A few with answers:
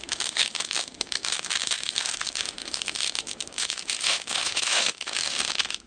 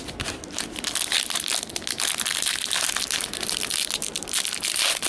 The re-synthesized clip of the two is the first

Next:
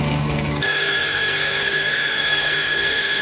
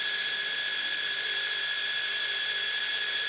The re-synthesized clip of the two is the first